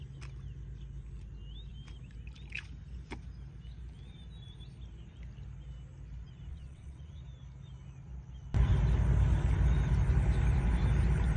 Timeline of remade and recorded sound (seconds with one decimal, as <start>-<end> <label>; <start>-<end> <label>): 0.0-6.5 recorded; 6.5-7.2 remade; 7.2-11.4 recorded